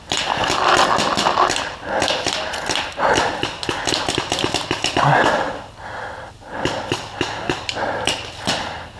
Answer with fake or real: real